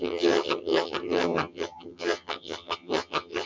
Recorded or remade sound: remade